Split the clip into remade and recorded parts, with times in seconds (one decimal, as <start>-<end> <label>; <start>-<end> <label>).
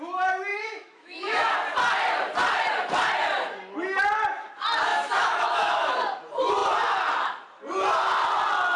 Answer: 0.0-0.5 recorded; 0.5-1.5 remade; 1.5-4.9 recorded; 4.9-5.9 remade; 5.9-8.8 recorded